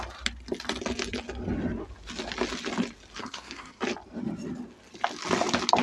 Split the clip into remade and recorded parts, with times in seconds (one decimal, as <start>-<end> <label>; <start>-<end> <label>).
0.0-3.2 recorded; 3.2-3.8 remade; 3.8-5.8 recorded